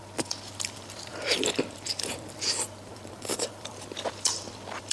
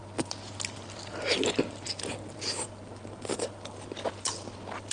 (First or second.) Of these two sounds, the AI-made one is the first